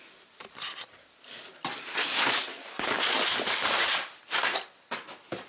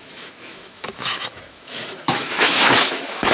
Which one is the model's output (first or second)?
second